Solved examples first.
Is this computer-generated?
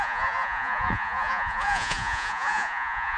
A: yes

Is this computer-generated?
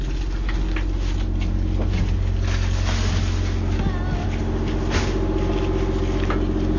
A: no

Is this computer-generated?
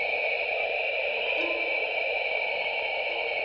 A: no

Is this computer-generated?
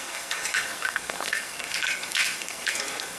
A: yes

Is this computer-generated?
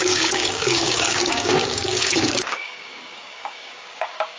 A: yes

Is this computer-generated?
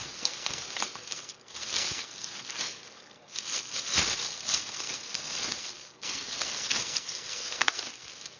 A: yes